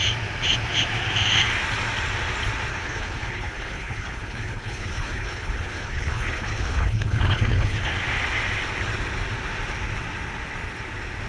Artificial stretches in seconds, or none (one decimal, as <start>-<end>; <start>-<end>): 2.7-7.9